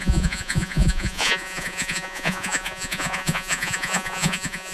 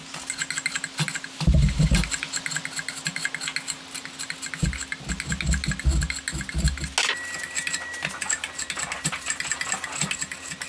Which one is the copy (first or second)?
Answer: first